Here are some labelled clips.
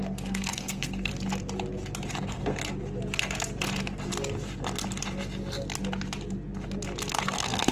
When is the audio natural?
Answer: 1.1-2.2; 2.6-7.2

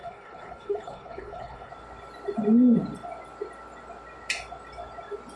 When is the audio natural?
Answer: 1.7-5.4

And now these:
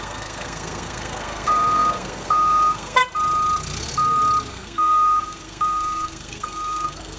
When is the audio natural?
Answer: 3.0-4.5